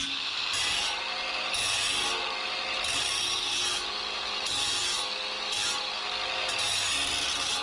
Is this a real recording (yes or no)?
yes